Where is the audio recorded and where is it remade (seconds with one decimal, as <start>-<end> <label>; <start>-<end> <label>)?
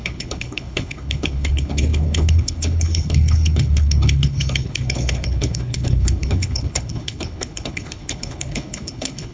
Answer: 0.0-9.3 remade